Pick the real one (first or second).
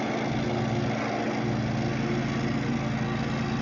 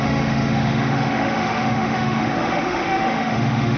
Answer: first